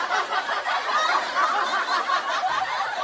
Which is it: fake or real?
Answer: real